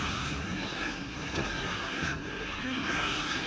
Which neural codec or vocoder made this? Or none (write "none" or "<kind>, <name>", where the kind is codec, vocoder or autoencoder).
codec, SNAC